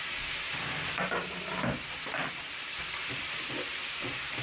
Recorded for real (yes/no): yes